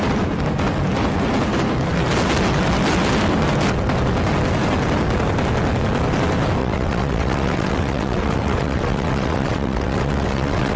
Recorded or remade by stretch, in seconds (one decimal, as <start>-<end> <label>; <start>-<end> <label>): 0.0-6.6 recorded; 6.6-10.8 remade